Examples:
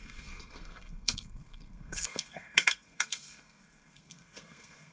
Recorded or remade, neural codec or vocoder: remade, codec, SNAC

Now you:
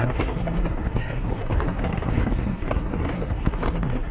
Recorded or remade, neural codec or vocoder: remade, codec, SNAC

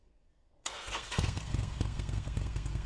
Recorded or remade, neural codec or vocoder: remade, codec, SNAC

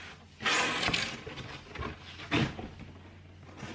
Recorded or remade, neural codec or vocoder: recorded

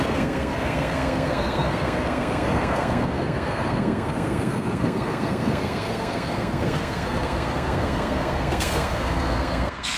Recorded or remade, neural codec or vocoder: remade, codec, SNAC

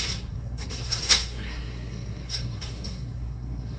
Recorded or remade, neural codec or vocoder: remade, codec, SNAC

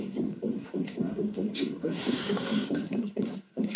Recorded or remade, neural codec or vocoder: remade, codec, SNAC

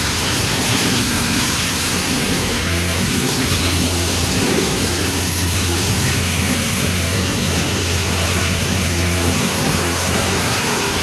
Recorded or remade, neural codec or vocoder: remade, codec, SNAC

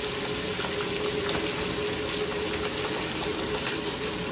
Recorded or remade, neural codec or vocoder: recorded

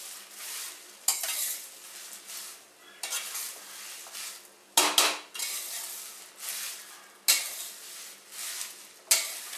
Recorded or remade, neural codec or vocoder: recorded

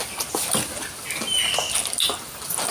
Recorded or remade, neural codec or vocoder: recorded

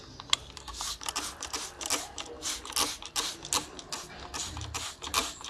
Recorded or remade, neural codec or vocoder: recorded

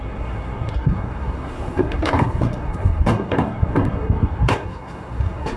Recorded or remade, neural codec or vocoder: remade, codec, SNAC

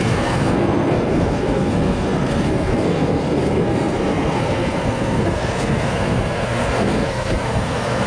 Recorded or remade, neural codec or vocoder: remade, codec, SNAC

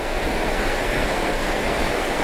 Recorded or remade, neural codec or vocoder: remade, codec, SNAC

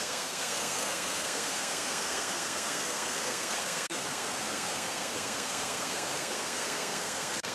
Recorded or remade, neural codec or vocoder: remade, codec, SNAC